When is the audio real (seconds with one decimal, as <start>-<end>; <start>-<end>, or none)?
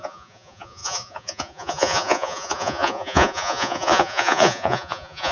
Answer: none